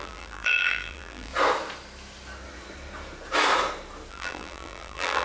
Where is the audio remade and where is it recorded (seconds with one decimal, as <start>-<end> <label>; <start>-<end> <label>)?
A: 0.0-1.3 remade; 1.3-4.1 recorded; 4.1-5.2 remade